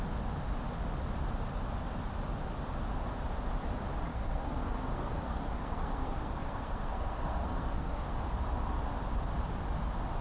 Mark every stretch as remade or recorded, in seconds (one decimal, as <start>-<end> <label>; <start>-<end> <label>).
0.0-4.1 recorded; 4.1-8.2 remade; 8.2-10.2 recorded